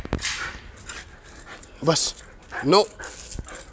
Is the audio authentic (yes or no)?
yes